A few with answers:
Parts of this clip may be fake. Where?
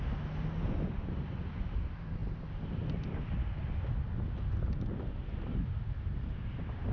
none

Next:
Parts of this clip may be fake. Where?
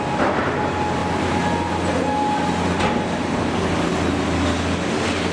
none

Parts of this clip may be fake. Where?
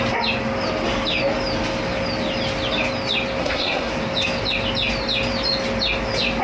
3.4-3.9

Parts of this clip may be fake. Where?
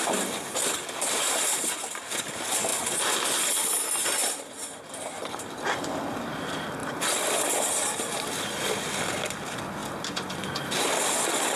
4.2-5.8; 6.8-9.0; 9.8-10.5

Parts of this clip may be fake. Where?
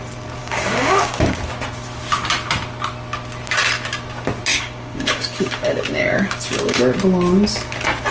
0.4-1.4; 4.5-6.8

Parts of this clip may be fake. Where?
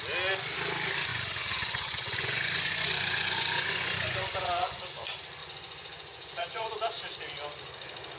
1.1-4.9; 5.4-6.7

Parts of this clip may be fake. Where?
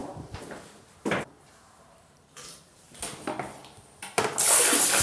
0.0-3.0; 3.6-4.2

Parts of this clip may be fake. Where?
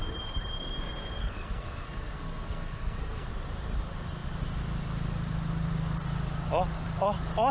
1.2-3.3